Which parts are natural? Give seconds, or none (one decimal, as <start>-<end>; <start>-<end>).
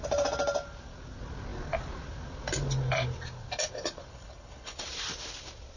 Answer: 0.0-4.1; 4.8-5.8